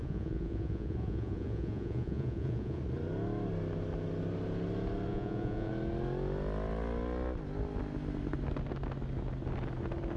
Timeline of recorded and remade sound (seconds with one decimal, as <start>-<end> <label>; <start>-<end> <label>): 0.0-2.8 remade; 2.8-5.1 recorded; 5.1-5.7 remade; 5.7-10.2 recorded